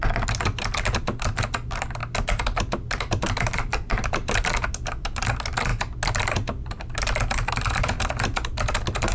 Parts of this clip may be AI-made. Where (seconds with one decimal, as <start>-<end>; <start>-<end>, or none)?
0.0-2.0; 3.2-4.2; 4.7-5.7; 7.5-9.1